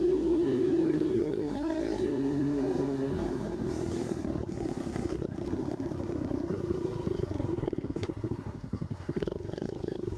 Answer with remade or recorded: remade